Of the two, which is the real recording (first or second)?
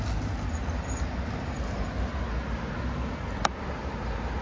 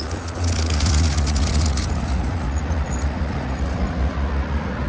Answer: first